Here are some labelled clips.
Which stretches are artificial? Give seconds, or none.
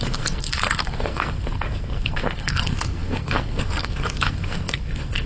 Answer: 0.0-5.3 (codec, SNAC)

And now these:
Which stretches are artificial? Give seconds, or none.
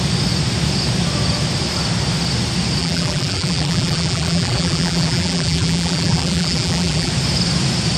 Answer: 2.8-7.1 (vocoder, BigVGAN v2)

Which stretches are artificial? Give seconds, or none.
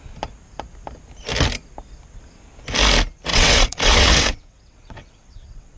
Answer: 3.3-5.8 (vocoder, WaveNeXt)